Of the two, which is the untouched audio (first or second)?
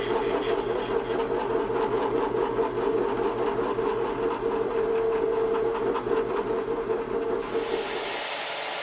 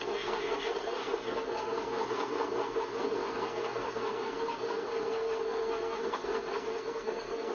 first